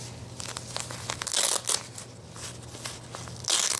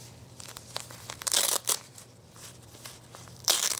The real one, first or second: first